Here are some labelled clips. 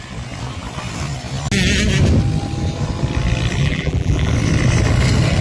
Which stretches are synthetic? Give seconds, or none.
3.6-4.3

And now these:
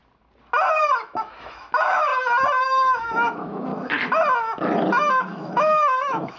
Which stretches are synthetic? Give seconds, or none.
1.0-2.1; 2.6-3.7; 5.1-6.4

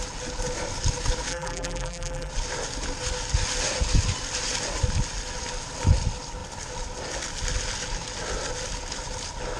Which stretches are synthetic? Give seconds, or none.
1.3-2.3

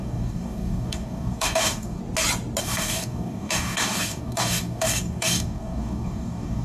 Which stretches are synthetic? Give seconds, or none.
0.0-2.0; 2.6-6.6

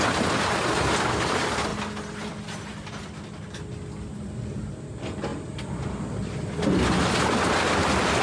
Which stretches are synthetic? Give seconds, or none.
none